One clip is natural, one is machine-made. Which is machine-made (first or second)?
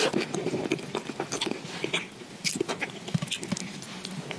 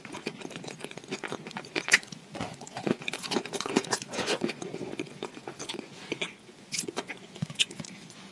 second